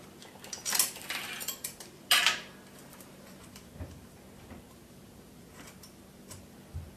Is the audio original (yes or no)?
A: no